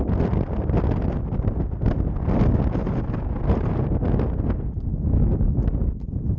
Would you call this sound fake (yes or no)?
no